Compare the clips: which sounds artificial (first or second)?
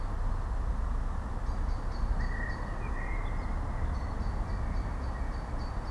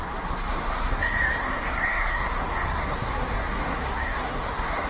second